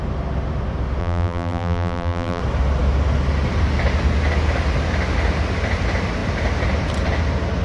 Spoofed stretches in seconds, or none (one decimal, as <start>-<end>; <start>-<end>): 1.0-2.4